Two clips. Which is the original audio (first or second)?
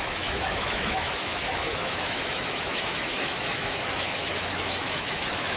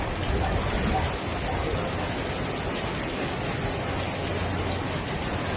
second